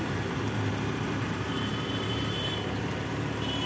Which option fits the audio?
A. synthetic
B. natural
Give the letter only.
A